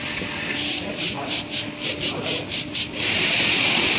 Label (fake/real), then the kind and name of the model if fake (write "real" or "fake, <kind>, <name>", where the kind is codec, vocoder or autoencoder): real